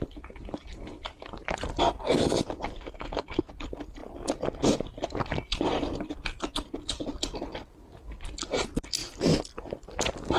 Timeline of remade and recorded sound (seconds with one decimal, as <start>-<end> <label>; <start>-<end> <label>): 0.0-2.7 recorded; 2.7-3.5 remade; 3.5-10.4 recorded